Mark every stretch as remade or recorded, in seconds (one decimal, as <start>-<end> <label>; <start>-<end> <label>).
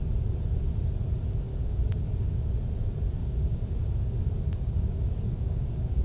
0.0-1.5 recorded; 1.5-2.5 remade; 2.5-3.2 recorded; 3.2-6.0 remade